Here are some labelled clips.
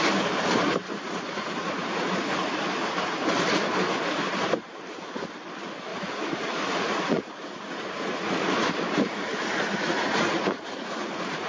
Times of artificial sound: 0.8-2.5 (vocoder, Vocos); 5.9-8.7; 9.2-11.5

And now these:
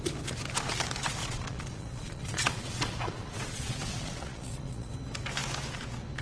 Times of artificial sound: 1.2-4.9 (vocoder, Vocos)

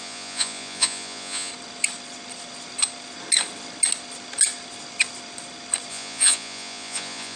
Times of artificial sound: 0.0-1.5 (vocoder, Vocos); 5.9-7.4